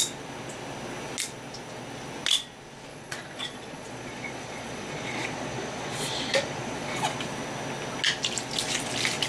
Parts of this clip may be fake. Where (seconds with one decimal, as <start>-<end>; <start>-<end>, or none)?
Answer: 2.9-7.2